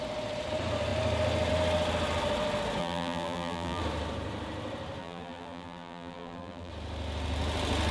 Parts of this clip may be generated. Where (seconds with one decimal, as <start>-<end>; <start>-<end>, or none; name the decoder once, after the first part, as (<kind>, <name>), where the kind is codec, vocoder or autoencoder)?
2.8-3.8 (vocoder, BigVGAN v2); 5.0-6.7